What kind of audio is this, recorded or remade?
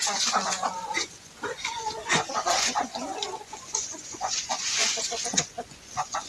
remade